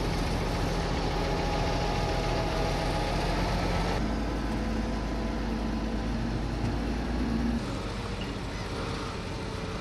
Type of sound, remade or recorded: recorded